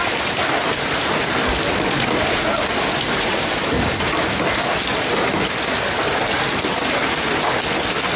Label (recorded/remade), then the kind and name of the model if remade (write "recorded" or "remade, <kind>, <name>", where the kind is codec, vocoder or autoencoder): recorded